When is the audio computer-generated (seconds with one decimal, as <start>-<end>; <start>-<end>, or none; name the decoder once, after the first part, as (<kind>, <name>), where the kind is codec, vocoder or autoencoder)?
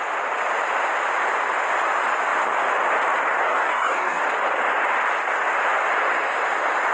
3.4-4.2 (codec, DAC)